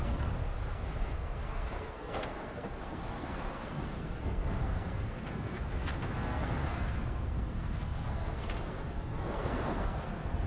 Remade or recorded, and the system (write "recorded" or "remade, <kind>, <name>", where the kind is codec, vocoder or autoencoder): remade, codec, SNAC